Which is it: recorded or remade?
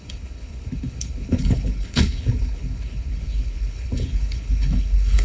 remade